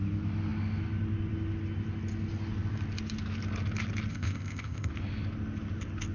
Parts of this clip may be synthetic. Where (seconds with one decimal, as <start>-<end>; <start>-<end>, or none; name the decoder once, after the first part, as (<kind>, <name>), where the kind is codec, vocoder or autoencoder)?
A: 4.1-4.9 (codec, ZipCodec)